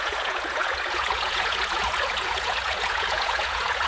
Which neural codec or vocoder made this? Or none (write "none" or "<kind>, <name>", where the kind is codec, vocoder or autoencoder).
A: vocoder, Vocos